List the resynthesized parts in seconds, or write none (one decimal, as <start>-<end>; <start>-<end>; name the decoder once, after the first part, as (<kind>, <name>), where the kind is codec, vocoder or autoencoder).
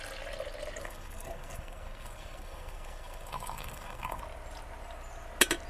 0.8-4.2 (codec, SNAC)